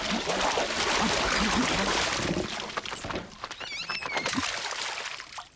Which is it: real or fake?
real